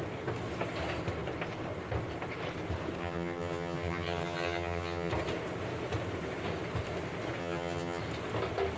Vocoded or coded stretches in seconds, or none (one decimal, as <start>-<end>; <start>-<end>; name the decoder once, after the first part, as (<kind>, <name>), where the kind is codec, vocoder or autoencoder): 3.0-5.1 (vocoder, HiFi-GAN); 7.4-8.0